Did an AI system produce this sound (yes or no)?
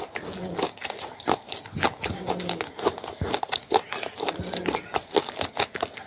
no